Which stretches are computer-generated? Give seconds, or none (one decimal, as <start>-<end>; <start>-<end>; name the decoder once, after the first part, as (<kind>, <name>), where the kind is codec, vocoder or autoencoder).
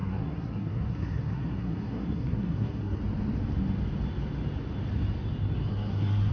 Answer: 0.0-3.0 (codec, SNAC); 5.7-6.3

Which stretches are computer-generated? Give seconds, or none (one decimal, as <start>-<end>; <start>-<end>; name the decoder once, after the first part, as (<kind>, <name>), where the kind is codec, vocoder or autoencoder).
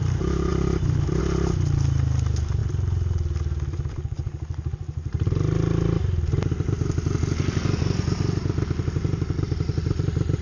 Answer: none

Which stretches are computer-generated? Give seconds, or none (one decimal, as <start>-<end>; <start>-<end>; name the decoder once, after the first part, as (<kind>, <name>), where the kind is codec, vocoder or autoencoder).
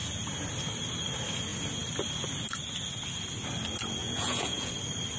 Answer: 4.0-4.7 (vocoder, Vocos)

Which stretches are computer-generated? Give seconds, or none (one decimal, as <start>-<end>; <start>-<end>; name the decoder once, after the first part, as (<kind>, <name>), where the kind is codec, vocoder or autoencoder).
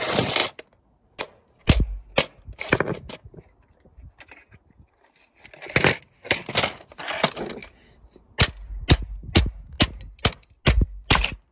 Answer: none